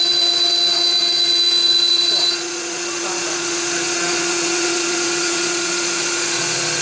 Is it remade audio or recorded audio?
remade